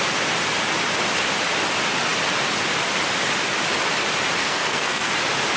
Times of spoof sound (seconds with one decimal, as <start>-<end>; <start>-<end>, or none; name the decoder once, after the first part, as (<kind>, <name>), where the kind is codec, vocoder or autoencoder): 4.4-5.1 (codec, SNAC)